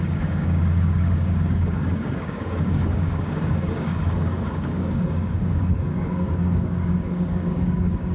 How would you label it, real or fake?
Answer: fake